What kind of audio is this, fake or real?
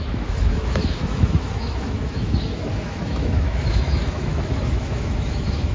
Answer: fake